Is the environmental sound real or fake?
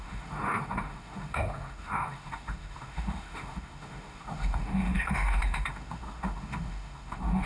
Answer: fake